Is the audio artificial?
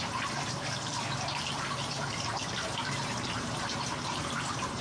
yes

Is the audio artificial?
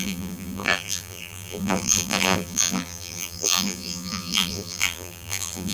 yes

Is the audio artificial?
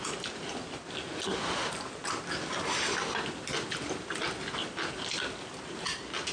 no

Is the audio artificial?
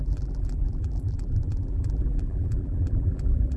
yes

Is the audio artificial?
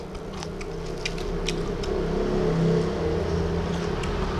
no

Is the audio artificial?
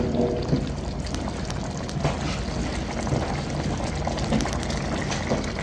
no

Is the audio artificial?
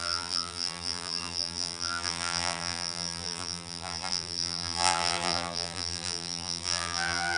yes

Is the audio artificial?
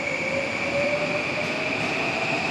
yes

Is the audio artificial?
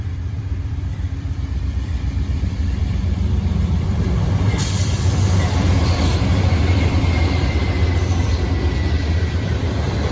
yes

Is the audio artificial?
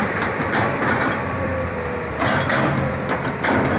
yes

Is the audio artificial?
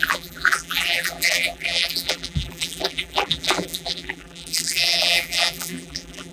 yes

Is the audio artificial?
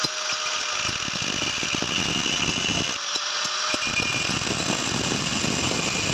no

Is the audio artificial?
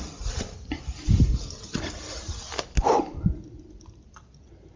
no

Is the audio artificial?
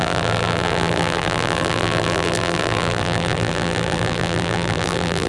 yes